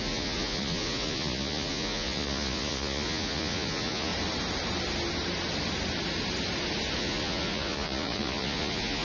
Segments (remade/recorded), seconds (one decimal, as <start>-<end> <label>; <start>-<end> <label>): 0.0-4.1 remade; 4.1-7.0 recorded; 7.0-9.0 remade